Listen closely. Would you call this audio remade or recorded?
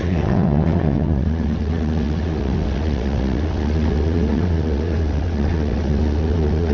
remade